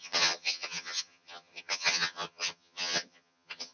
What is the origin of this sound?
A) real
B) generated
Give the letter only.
B